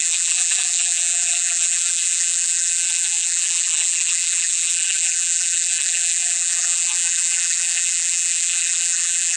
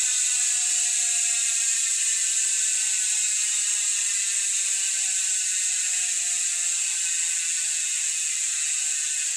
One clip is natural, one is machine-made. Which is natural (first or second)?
second